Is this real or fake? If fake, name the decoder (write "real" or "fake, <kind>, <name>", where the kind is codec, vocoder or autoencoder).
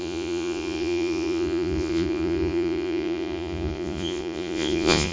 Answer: fake, vocoder, Vocos